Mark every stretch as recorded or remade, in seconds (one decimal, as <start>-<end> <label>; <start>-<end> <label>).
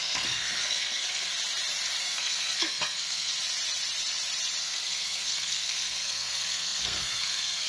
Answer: 0.0-1.3 remade; 1.3-2.0 recorded; 2.0-3.3 remade; 3.3-4.6 recorded; 4.6-7.7 remade